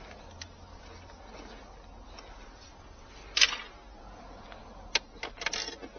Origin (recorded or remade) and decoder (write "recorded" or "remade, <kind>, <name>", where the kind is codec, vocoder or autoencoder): recorded